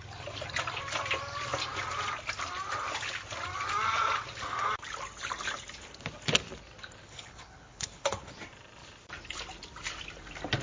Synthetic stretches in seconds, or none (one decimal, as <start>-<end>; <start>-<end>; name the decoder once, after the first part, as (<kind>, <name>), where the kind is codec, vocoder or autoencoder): 7.0-8.3 (codec, HILCodec)